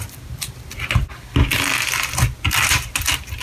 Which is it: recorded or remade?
recorded